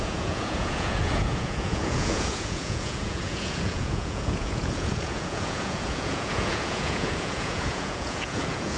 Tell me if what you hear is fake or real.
fake